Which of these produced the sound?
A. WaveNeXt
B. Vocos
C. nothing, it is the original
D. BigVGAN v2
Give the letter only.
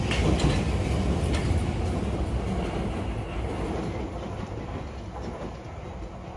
C